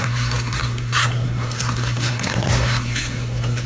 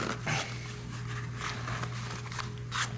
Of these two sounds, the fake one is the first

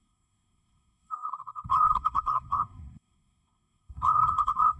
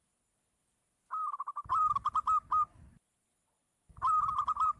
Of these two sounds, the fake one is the first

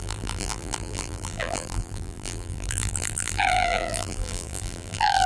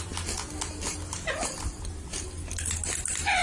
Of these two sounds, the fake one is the first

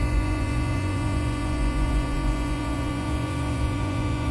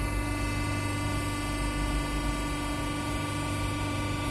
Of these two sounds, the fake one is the first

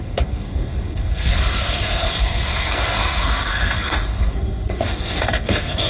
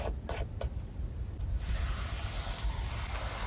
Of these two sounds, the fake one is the first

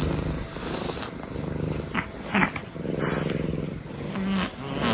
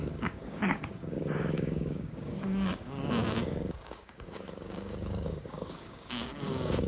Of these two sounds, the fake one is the second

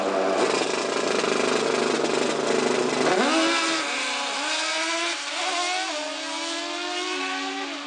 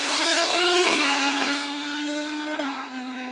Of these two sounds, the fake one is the second